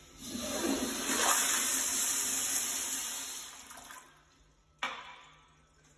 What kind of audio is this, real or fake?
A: real